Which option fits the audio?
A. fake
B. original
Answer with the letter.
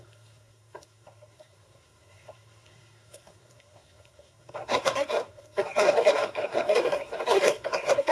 A